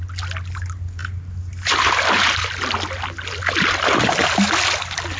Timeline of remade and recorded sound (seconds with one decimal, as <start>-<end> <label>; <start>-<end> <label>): 0.0-5.2 recorded